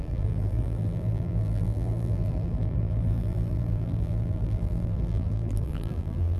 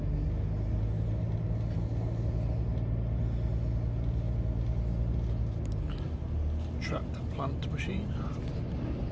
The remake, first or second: first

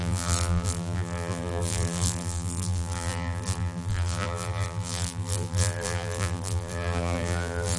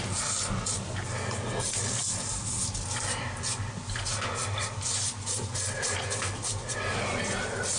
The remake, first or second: first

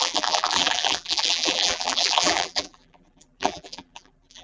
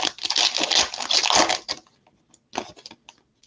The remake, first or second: first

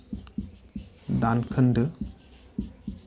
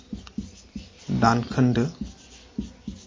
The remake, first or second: first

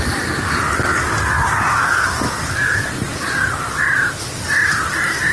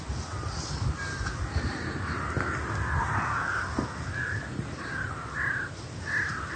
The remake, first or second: first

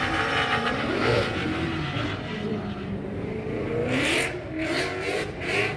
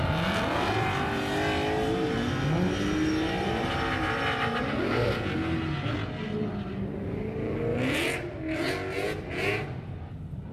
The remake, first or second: first